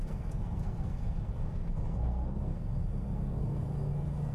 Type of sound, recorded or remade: remade